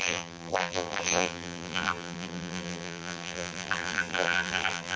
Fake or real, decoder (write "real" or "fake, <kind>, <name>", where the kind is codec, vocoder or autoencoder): fake, vocoder, BigVGAN v2